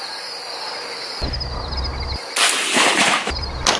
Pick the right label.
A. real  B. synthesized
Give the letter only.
A